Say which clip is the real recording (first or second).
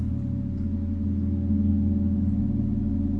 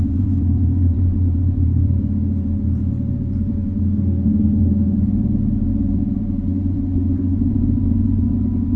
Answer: first